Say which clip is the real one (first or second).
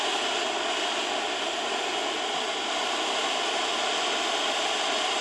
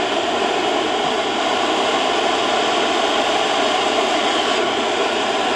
first